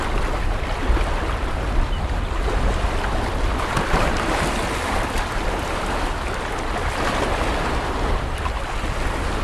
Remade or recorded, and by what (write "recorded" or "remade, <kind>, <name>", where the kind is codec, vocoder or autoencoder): recorded